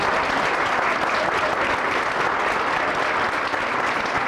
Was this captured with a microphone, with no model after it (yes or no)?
yes